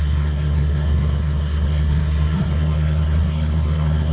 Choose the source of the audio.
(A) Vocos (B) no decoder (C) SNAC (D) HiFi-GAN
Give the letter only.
C